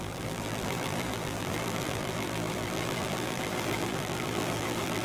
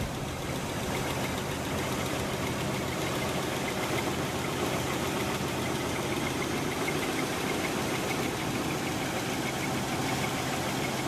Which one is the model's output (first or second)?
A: first